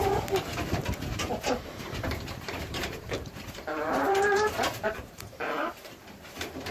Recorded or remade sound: remade